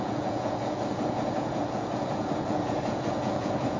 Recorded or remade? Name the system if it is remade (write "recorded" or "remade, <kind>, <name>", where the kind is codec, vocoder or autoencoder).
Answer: remade, vocoder, Vocos